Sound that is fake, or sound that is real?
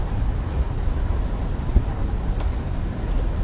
fake